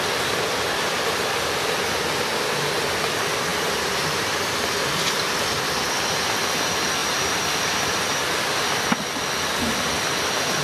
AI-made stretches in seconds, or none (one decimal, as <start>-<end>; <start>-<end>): 3.5-5.4; 7.0-10.6